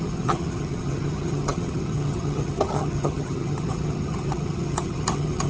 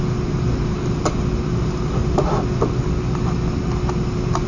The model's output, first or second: first